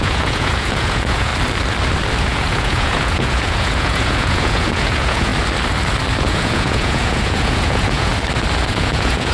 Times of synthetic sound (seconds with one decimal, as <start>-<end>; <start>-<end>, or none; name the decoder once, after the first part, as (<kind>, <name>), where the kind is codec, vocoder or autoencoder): 0.0-1.3 (vocoder, Vocos); 2.2-5.3; 6.2-8.1; 8.7-9.3